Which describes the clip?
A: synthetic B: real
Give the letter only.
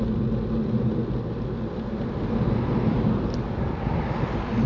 B